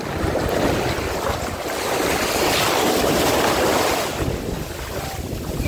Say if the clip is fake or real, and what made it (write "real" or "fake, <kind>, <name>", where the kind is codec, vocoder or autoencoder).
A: real